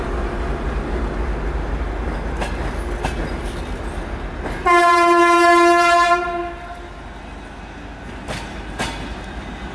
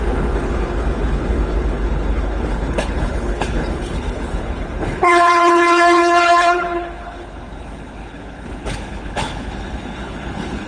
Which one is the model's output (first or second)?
second